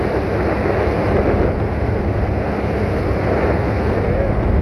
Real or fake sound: real